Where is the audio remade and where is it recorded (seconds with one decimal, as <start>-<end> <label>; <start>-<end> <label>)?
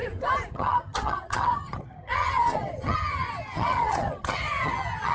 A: 0.0-0.5 recorded; 0.5-5.1 remade